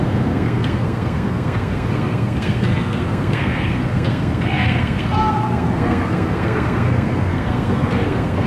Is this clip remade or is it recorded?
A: remade